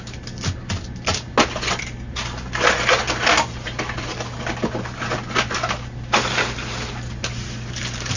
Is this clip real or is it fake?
real